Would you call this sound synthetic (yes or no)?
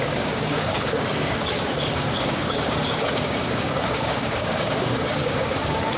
yes